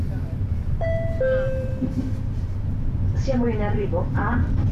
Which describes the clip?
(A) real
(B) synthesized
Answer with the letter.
B